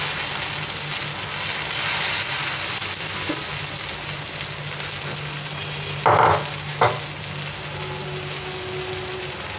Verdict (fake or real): real